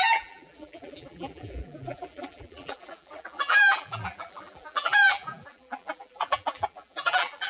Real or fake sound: fake